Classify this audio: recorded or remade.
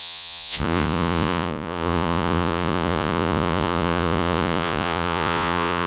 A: remade